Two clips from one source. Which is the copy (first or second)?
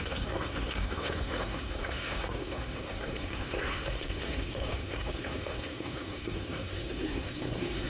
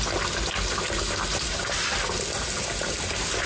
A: first